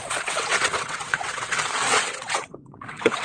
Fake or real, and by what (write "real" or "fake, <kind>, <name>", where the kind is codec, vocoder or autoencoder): fake, vocoder, WaveNeXt